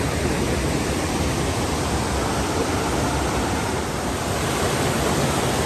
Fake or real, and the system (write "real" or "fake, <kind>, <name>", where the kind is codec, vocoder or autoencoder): real